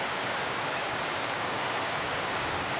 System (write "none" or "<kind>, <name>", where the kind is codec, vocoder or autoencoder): codec, DAC